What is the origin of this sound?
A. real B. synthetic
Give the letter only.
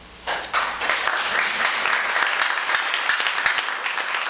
A